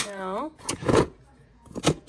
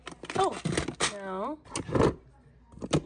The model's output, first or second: first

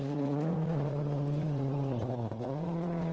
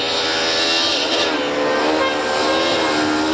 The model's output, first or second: first